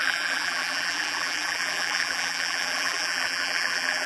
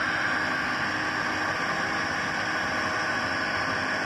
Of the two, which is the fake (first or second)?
first